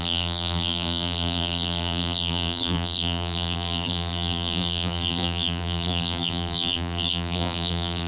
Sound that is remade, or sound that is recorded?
remade